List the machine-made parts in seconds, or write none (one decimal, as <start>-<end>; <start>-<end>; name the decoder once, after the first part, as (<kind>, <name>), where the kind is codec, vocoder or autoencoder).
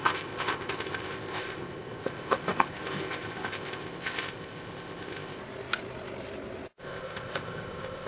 0.0-5.4 (codec, ZipCodec); 6.8-8.1